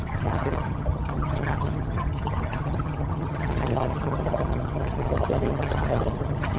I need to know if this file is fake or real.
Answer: fake